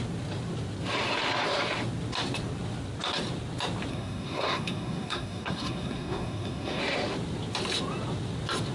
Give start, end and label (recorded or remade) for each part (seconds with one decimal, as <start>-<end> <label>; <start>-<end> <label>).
0.0-3.9 recorded; 3.9-6.8 remade; 6.8-8.7 recorded